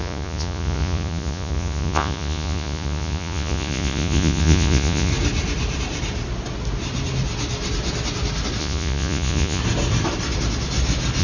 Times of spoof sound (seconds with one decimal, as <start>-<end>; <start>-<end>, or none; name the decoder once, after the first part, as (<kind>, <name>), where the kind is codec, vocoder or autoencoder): 0.0-5.1 (vocoder, Vocos); 8.6-9.6